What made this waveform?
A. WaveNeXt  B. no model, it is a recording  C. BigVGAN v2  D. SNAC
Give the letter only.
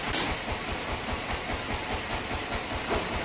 B